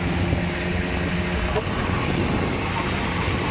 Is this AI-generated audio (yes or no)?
no